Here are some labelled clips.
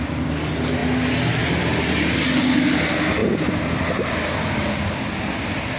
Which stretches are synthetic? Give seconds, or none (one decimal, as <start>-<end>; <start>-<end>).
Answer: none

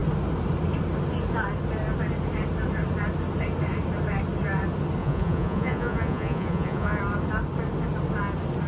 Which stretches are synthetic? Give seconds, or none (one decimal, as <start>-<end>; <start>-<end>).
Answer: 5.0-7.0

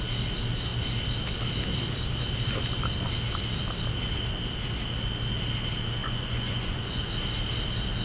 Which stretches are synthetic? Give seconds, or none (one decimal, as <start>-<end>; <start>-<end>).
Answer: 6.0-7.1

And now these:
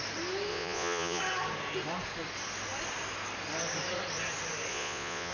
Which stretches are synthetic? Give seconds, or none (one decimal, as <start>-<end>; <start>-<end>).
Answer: 0.5-1.2; 4.7-5.3